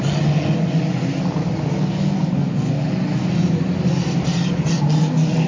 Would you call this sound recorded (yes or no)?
yes